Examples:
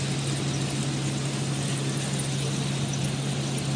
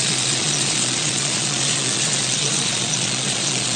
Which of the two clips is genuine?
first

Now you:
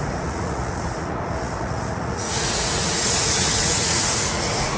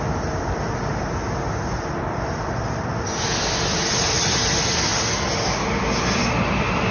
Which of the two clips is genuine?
second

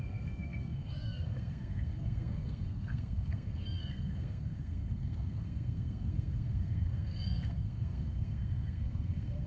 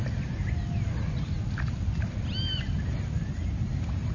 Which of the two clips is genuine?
second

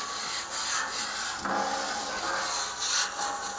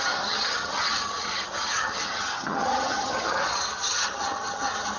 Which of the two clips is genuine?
first